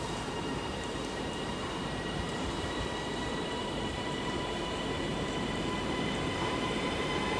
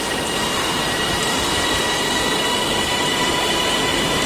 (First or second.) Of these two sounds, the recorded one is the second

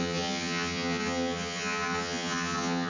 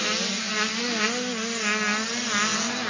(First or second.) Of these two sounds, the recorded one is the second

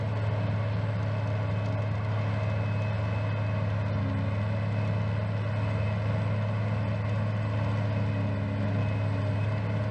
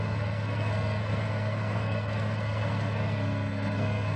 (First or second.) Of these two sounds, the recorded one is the first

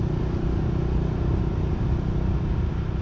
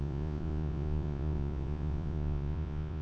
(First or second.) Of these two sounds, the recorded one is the first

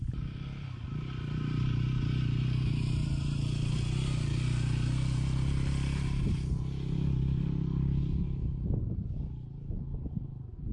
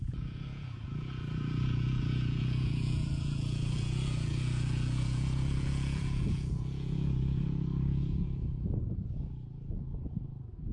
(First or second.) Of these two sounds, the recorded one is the first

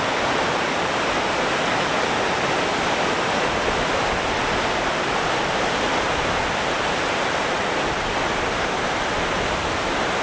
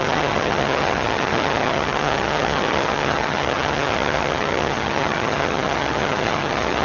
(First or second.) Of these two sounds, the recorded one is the first